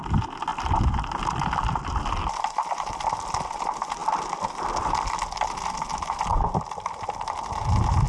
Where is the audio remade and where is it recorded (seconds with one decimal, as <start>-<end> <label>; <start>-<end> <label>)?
0.0-0.5 recorded; 0.5-2.2 remade; 2.2-6.3 recorded; 6.3-7.0 remade; 7.0-8.1 recorded